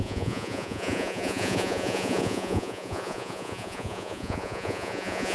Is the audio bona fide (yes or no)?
no